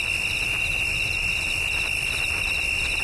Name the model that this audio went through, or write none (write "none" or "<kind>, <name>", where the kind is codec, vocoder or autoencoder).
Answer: none